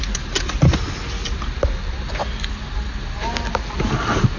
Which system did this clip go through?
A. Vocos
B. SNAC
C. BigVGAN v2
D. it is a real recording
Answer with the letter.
D